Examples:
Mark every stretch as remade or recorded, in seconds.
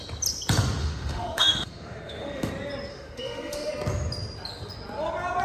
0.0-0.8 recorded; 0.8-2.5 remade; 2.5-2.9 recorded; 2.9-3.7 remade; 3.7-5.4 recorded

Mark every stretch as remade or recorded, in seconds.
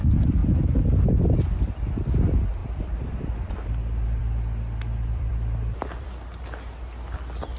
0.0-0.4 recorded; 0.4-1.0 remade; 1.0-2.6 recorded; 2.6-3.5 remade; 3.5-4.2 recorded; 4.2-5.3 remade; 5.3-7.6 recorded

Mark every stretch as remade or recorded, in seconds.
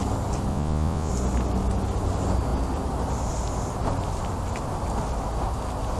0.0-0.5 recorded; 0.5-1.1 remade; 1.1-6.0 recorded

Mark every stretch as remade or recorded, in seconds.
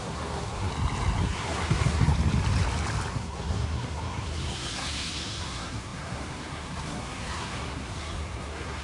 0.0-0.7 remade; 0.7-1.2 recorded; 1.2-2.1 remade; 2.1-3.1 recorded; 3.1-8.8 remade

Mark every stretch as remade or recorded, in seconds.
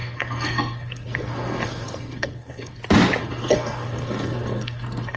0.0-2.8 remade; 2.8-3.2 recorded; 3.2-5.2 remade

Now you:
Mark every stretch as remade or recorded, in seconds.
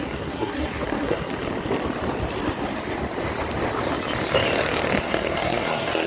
0.0-1.3 remade; 1.3-5.0 recorded; 5.0-6.1 remade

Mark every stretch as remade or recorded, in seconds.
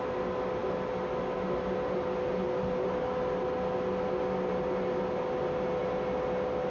0.0-6.7 recorded